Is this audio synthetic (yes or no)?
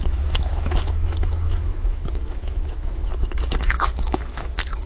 yes